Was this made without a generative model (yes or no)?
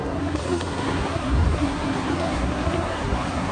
no